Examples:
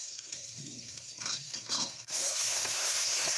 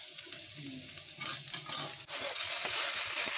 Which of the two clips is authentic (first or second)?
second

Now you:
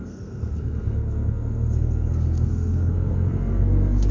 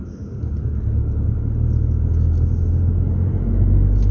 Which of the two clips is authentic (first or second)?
second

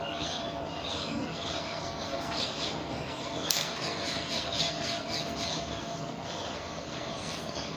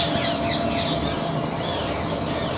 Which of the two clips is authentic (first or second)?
second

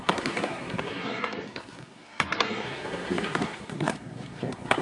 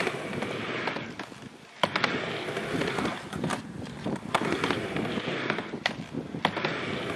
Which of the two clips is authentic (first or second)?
second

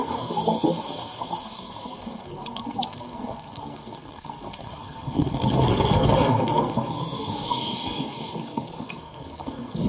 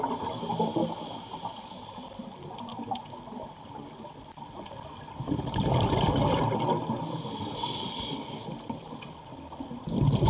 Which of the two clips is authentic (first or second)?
second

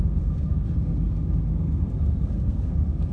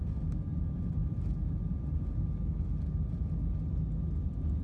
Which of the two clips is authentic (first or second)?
second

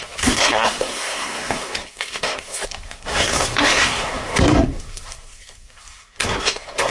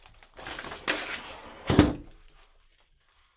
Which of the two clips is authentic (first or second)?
second